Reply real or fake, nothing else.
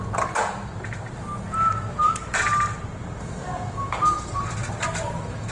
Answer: real